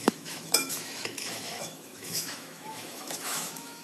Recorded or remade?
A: remade